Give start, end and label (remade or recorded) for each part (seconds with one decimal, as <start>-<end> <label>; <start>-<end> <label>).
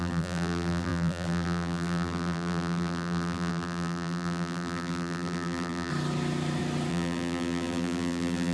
0.0-5.9 remade; 5.9-6.9 recorded; 6.9-8.5 remade